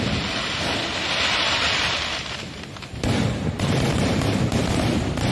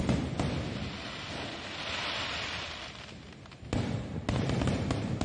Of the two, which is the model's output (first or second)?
first